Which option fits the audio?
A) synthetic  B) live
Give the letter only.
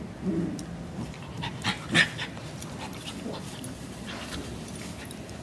B